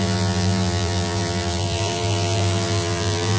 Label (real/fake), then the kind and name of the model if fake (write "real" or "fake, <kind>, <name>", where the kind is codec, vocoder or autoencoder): fake, vocoder, BigVGAN v2